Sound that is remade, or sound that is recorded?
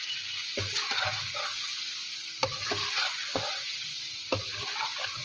recorded